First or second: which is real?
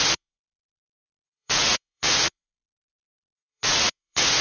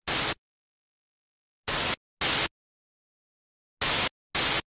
second